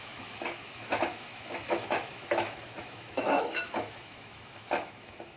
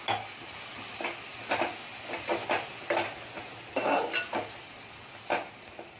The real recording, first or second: second